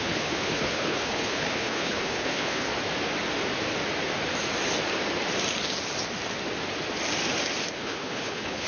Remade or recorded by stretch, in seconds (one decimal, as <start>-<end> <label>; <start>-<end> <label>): 0.0-2.7 remade; 2.7-7.7 recorded; 7.7-8.7 remade